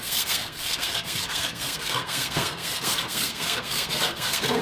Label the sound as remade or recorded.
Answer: remade